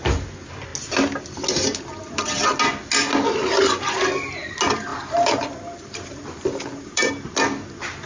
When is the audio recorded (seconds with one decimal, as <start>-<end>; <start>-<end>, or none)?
0.0-4.9; 7.1-8.1